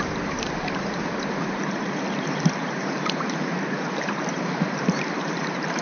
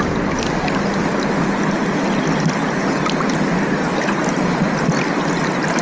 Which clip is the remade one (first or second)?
first